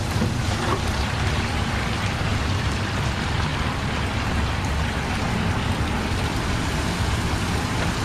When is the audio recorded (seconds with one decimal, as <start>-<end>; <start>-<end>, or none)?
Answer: 2.3-2.8; 3.5-6.0